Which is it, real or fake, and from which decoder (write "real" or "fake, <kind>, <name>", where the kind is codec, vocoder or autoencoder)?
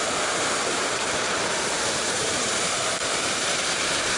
fake, vocoder, BigVGAN v2